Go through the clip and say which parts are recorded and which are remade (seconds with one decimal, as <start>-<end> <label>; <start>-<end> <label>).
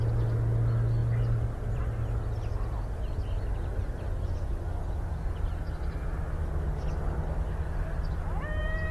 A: 0.0-8.9 recorded